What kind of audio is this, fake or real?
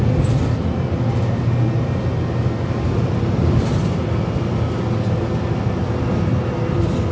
real